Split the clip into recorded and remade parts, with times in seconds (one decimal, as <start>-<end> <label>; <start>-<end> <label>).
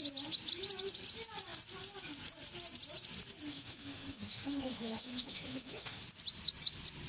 0.0-3.5 recorded; 3.5-6.0 remade; 6.0-7.1 recorded